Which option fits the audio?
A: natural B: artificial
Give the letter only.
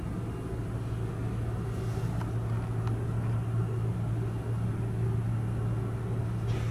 A